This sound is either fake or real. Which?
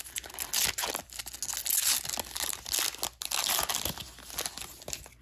real